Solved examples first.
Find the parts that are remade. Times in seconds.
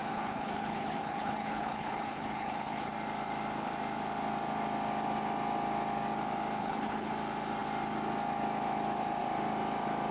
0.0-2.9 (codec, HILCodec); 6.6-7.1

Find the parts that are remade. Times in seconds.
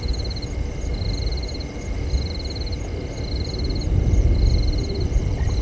none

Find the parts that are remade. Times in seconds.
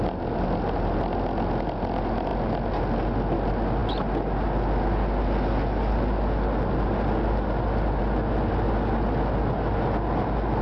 none